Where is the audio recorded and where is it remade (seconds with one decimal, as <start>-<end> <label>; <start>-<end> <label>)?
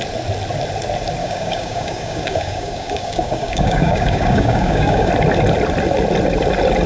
0.0-1.2 recorded; 1.2-5.1 remade; 5.1-6.9 recorded